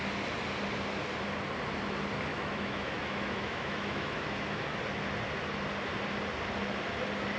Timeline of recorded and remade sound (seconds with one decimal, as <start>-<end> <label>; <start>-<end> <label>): 0.0-2.3 recorded; 2.3-4.8 remade; 4.8-7.4 recorded